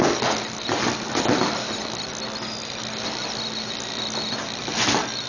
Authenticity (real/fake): real